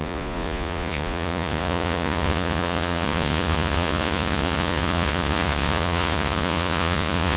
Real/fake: fake